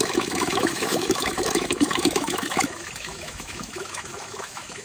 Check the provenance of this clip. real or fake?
fake